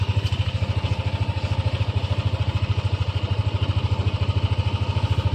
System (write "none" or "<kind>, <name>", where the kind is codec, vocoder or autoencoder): none